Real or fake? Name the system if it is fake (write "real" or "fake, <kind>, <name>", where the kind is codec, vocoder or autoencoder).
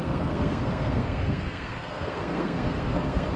fake, codec, SNAC